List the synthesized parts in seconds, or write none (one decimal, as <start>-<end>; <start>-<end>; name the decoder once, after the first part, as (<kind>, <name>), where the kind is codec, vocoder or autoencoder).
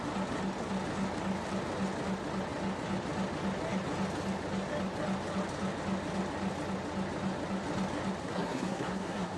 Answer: 8.2-9.4 (codec, SNAC)